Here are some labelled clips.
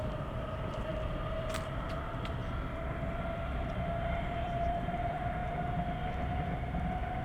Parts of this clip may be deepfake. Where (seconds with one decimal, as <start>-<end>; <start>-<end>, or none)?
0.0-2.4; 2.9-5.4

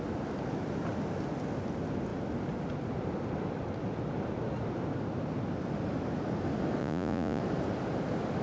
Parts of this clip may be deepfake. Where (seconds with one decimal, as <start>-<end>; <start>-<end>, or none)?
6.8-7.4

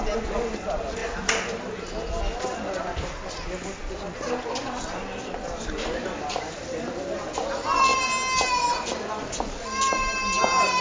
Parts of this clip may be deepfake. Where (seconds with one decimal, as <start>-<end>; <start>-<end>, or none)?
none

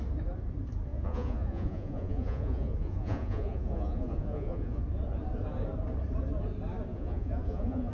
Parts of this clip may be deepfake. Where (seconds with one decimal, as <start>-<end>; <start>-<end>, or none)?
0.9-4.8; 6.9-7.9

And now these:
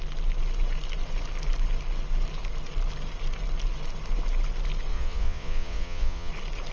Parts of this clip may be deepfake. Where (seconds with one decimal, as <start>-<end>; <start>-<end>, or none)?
4.9-6.3